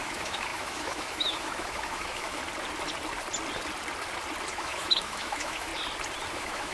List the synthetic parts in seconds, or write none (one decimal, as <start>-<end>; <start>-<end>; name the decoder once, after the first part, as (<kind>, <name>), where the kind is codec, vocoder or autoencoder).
0.0-2.4 (autoencoder, DAC-VAE); 4.5-5.7; 6.3-6.7